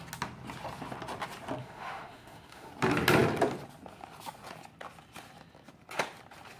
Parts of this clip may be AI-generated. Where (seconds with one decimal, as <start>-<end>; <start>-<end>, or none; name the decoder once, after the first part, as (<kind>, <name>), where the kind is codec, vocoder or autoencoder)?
1.6-2.7 (autoencoder, DAC-VAE)